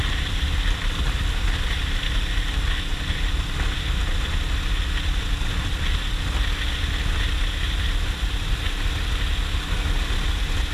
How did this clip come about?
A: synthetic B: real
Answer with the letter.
B